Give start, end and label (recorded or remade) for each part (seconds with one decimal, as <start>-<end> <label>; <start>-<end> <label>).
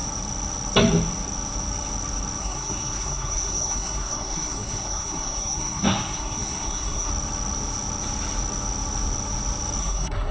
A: 0.0-2.4 recorded; 2.4-7.1 remade; 7.1-9.8 recorded; 9.8-10.3 remade